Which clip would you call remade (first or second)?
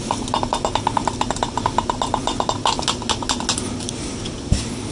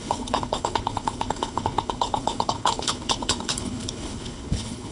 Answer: second